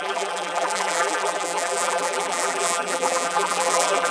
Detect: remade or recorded remade